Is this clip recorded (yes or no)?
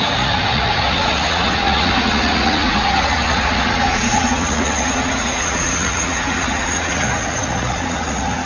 no